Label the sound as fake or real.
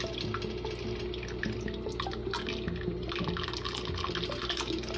real